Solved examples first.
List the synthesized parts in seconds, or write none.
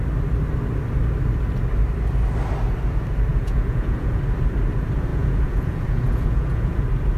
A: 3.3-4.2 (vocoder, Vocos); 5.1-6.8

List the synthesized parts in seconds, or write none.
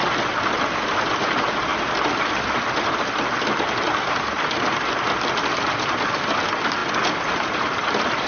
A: none